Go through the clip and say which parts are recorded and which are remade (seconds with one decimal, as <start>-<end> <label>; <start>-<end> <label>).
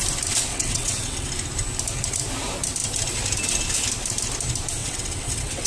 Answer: 0.0-0.5 recorded; 0.5-1.3 remade; 1.3-4.8 recorded; 4.8-5.7 remade